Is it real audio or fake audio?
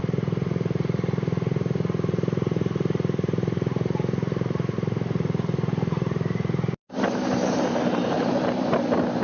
fake